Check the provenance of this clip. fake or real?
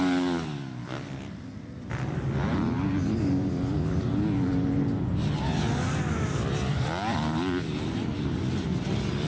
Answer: real